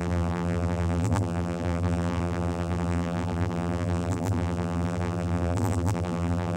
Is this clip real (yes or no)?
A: no